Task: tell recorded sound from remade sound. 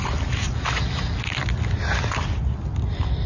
recorded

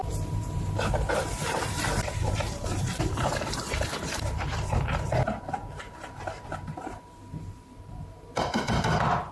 remade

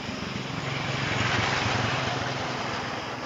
recorded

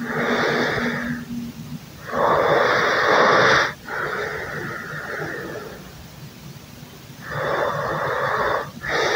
recorded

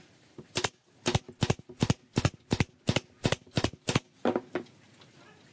recorded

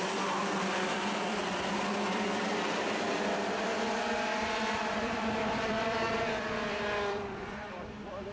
remade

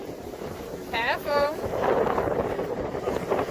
remade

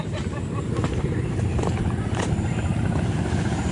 remade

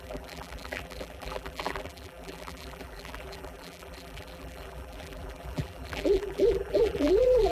remade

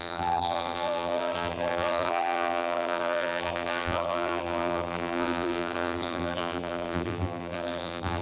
remade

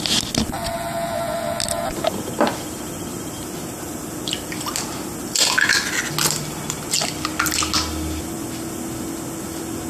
recorded